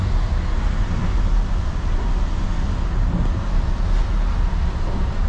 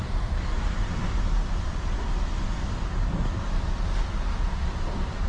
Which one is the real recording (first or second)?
first